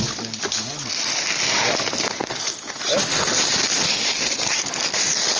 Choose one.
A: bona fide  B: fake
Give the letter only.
A